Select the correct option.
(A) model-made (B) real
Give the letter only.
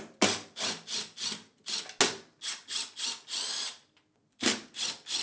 B